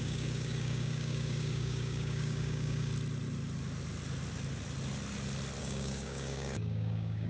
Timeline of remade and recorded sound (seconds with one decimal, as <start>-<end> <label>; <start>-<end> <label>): 0.0-2.9 remade; 2.9-5.6 recorded; 5.6-7.3 remade